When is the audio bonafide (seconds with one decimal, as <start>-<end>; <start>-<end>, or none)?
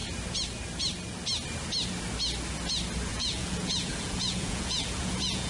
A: 0.0-3.1